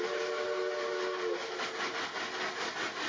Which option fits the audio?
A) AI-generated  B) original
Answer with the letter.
B